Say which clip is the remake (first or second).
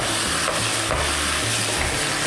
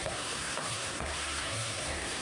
second